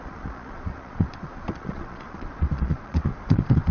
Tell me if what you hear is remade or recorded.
remade